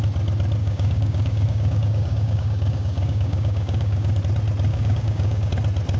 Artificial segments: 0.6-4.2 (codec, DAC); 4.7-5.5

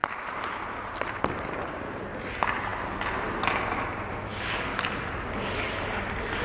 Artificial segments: 0.0-1.8 (vocoder, BigVGAN v2)

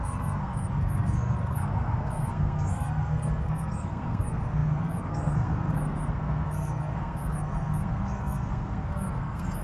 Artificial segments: 0.0-9.6 (codec, SNAC)

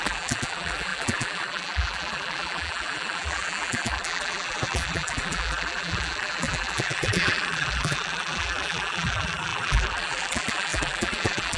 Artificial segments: 0.0-11.6 (vocoder, BigVGAN v2)

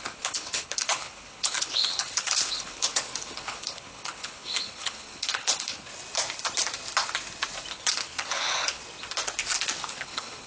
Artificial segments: 0.0-5.9 (codec, HILCodec); 7.7-8.8; 9.8-10.5

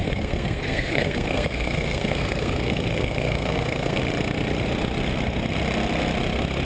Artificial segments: 0.0-4.0 (codec, SNAC)

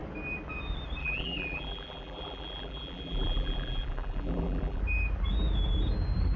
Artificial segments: 1.0-4.8 (vocoder, BigVGAN v2)